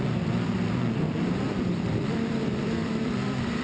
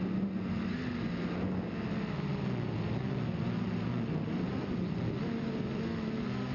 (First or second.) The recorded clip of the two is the second